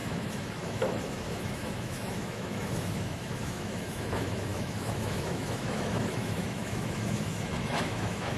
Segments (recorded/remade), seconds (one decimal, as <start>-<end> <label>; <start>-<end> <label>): 0.0-8.4 remade